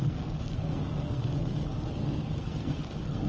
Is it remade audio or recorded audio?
remade